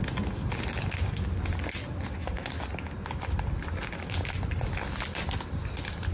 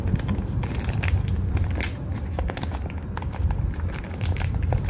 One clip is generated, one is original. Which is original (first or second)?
first